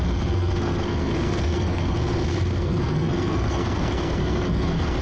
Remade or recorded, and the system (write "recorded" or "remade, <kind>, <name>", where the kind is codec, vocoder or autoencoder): remade, codec, SNAC